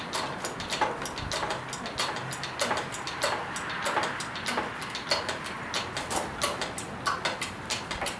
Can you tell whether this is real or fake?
real